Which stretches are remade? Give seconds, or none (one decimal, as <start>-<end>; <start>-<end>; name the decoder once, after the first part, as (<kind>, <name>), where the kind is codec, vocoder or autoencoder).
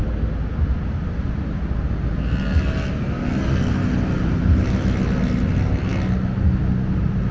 none